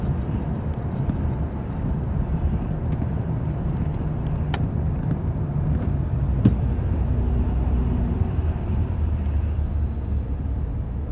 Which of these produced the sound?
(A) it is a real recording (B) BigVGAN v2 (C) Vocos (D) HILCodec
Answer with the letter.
B